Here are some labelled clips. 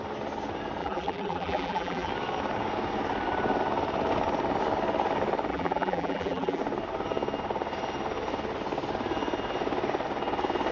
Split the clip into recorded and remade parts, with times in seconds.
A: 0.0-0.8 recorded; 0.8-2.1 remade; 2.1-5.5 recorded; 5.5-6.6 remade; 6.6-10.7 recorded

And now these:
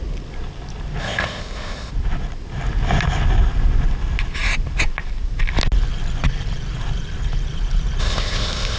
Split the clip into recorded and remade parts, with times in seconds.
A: 0.0-1.0 recorded; 1.0-1.9 remade; 1.9-8.0 recorded; 8.0-8.8 remade

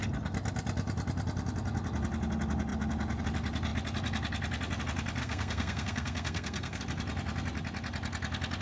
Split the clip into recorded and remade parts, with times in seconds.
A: 0.0-5.2 recorded; 5.2-6.8 remade; 6.8-8.6 recorded

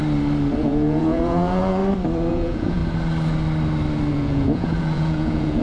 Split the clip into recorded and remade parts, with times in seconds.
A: 0.0-0.6 recorded; 0.6-1.8 remade; 1.8-2.3 recorded; 2.3-2.8 remade; 2.8-4.1 recorded; 4.1-5.6 remade

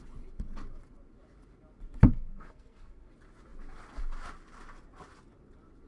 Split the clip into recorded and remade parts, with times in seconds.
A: 0.0-2.1 recorded; 2.1-3.1 remade; 3.1-5.9 recorded

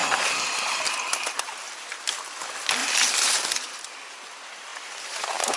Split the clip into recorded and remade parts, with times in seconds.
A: 0.0-2.8 recorded; 2.8-3.8 remade; 3.8-4.7 recorded; 4.7-5.6 remade

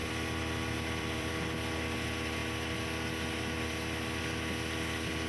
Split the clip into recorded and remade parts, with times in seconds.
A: 0.0-1.3 remade; 1.3-5.3 recorded

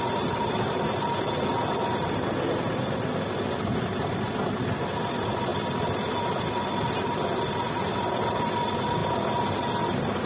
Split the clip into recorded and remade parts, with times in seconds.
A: 0.0-10.3 recorded